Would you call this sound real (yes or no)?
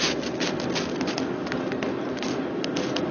yes